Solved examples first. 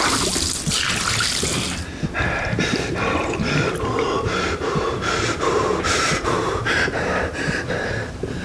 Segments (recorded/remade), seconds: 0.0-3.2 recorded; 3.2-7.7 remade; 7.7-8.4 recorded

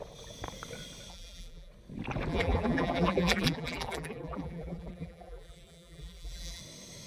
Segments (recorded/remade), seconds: 0.0-1.1 recorded; 1.1-1.7 remade; 1.7-2.3 recorded; 2.3-6.6 remade; 6.6-7.1 recorded

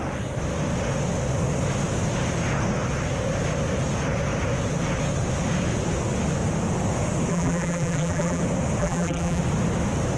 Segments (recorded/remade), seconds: 0.0-7.3 recorded; 7.3-8.4 remade; 8.4-8.8 recorded; 8.8-9.4 remade; 9.4-10.2 recorded

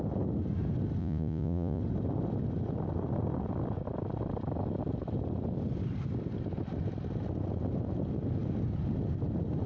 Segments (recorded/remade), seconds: 0.0-1.0 recorded; 1.0-1.8 remade; 1.8-9.7 recorded